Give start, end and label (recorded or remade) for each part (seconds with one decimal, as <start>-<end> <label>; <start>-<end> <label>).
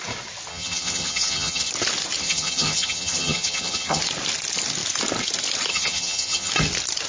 0.0-0.5 recorded; 0.5-1.7 remade; 1.7-2.2 recorded; 2.2-4.0 remade; 4.0-5.7 recorded; 5.7-6.5 remade; 6.5-7.1 recorded